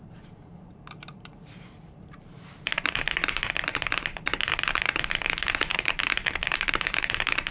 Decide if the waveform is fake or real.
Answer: fake